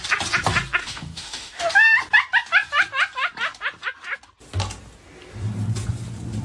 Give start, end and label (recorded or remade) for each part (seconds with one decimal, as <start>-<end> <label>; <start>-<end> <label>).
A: 0.0-0.8 recorded; 0.8-1.6 remade; 1.6-6.4 recorded